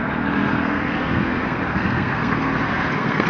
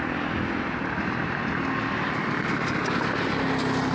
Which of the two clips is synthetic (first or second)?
first